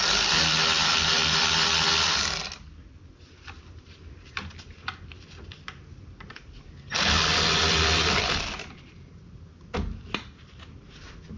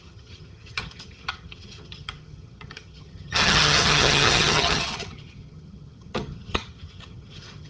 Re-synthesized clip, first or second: second